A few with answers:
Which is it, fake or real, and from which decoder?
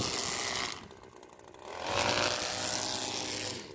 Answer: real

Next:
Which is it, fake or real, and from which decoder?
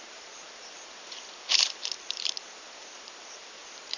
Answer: fake, vocoder, BigVGAN v2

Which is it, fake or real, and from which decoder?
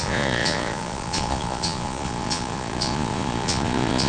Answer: fake, vocoder, Vocos